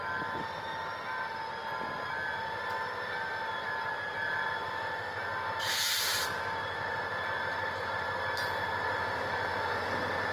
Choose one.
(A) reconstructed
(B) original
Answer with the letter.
B